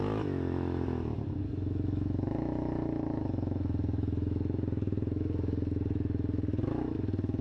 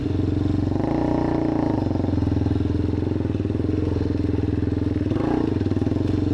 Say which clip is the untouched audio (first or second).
second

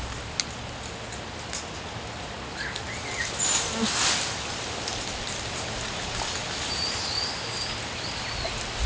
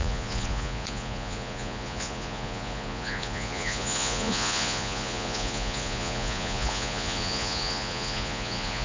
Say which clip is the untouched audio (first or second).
first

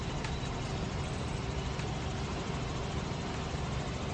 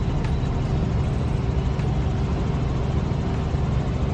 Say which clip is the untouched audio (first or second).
second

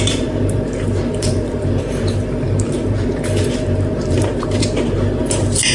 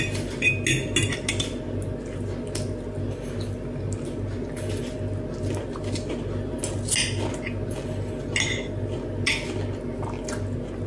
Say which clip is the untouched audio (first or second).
second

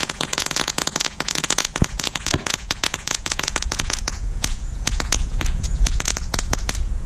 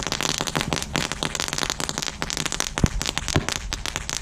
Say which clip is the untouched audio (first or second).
second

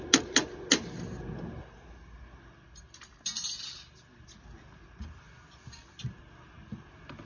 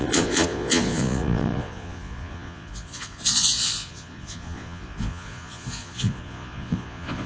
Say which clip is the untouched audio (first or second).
first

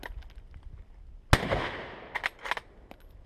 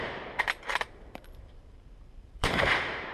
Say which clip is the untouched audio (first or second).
first